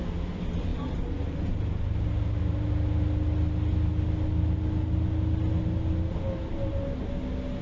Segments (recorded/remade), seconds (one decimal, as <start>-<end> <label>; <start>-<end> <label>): 0.0-7.6 recorded

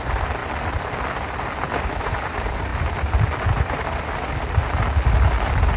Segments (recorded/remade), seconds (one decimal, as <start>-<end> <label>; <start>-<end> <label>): 0.0-0.4 remade; 0.4-2.0 recorded; 2.0-2.7 remade; 2.7-5.8 recorded

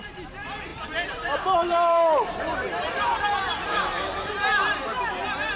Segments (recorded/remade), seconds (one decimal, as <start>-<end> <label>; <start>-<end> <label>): 0.0-5.6 remade

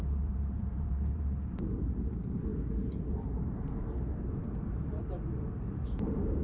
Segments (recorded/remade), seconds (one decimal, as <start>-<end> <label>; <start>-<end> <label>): 0.0-2.5 remade; 2.5-3.3 recorded; 3.3-4.1 remade; 4.1-5.5 recorded; 5.5-6.4 remade

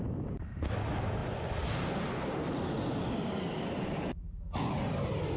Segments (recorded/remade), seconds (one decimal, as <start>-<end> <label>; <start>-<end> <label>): 0.0-1.2 recorded; 1.2-4.4 remade; 4.4-5.4 recorded

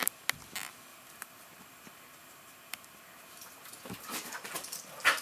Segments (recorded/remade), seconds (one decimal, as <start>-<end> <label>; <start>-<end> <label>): 0.0-0.9 recorded; 0.9-4.0 remade; 4.0-5.2 recorded

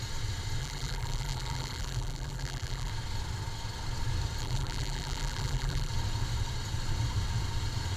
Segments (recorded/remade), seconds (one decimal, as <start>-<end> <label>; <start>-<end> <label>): 0.0-0.6 recorded; 0.6-2.9 remade; 2.9-4.4 recorded; 4.4-5.9 remade; 5.9-8.0 recorded